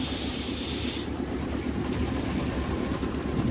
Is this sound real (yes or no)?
yes